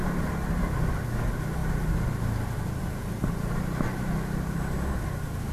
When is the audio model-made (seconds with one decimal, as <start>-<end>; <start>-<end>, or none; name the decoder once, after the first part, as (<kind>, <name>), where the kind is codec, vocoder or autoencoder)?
none